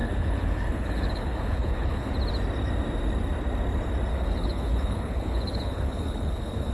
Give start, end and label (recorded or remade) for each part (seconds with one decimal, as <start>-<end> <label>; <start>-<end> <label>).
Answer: 0.0-2.1 remade; 2.1-4.1 recorded; 4.1-6.7 remade